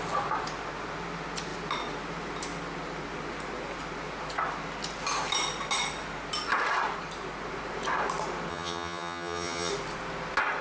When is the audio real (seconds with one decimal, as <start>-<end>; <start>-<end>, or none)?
0.0-8.5; 9.7-10.6